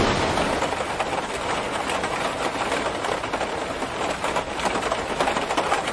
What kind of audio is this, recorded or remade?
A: recorded